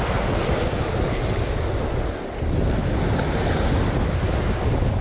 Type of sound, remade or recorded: recorded